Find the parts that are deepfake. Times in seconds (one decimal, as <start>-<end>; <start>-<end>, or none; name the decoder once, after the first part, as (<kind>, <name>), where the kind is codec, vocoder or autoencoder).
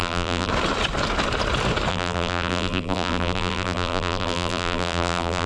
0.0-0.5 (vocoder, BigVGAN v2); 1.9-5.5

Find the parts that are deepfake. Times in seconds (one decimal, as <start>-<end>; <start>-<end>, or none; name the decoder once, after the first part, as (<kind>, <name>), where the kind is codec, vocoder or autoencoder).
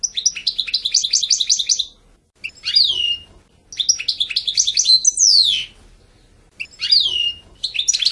0.4-1.3 (vocoder, BigVGAN v2)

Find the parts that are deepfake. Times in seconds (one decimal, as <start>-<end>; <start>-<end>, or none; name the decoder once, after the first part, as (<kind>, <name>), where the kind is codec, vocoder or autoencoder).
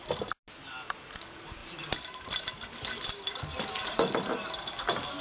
1.6-4.6 (vocoder, BigVGAN v2)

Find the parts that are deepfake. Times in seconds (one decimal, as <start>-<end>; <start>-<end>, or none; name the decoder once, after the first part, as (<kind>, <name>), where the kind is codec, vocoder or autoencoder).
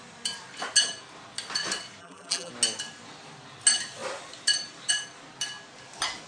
2.0-2.5 (vocoder, BigVGAN v2)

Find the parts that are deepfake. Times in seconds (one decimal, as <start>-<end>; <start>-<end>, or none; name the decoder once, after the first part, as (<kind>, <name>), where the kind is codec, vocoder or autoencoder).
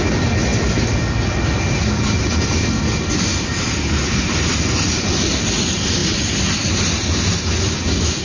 none